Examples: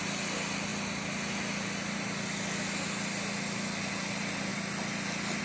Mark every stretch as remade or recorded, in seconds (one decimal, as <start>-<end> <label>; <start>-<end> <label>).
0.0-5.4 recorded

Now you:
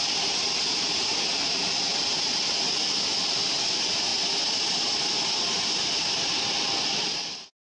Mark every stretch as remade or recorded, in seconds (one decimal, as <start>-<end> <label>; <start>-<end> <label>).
0.0-4.1 remade; 4.1-5.4 recorded; 5.4-7.7 remade

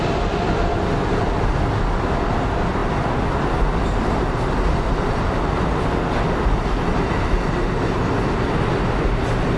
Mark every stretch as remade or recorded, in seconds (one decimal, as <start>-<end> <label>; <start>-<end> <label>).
0.0-9.6 recorded

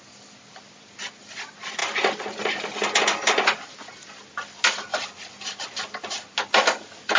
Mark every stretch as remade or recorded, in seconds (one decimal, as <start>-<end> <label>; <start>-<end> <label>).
0.0-4.9 recorded; 4.9-5.7 remade; 5.7-7.2 recorded

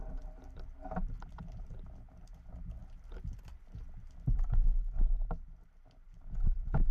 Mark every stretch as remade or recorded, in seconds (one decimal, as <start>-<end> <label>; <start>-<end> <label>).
0.0-6.9 recorded

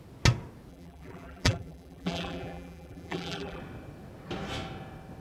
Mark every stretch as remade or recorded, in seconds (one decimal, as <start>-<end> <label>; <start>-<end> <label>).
0.0-0.7 recorded; 0.7-3.6 remade; 3.6-5.2 recorded